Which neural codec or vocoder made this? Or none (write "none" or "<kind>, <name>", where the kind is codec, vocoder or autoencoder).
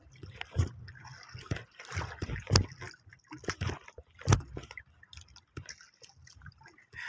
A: none